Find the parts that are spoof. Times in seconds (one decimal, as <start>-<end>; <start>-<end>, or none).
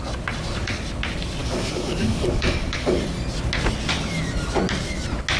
1.4-3.0